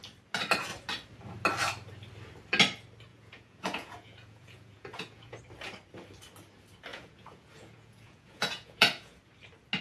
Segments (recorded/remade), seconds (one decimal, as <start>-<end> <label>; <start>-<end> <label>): 0.0-3.1 recorded; 3.1-5.4 remade; 5.4-6.9 recorded; 6.9-9.2 remade; 9.2-9.8 recorded